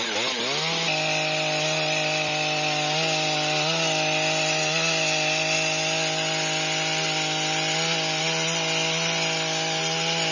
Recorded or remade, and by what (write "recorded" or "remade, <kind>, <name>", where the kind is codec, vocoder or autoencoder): recorded